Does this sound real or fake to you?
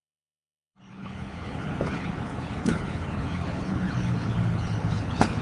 fake